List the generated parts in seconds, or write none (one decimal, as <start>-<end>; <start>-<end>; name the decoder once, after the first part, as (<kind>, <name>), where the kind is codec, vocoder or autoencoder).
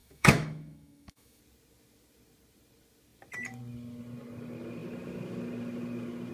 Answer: 0.0-1.4 (autoencoder, DAC-VAE)